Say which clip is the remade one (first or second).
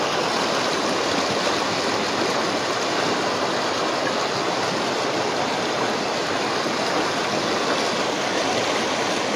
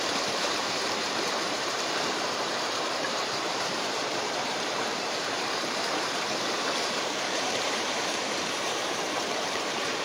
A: second